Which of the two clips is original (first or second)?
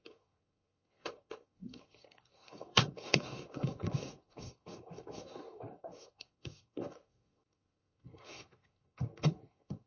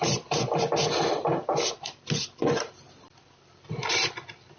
second